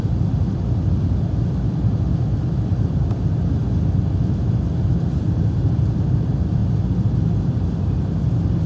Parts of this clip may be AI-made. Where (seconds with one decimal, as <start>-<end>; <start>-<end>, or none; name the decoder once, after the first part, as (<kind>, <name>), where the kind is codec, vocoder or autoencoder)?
none